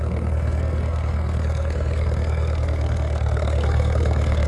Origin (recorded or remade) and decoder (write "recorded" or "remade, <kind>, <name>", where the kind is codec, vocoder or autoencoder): remade, codec, SNAC